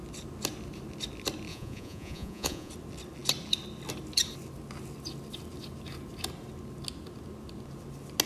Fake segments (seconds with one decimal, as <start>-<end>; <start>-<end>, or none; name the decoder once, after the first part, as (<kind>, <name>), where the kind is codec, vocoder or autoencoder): 1.5-2.7 (vocoder, Vocos)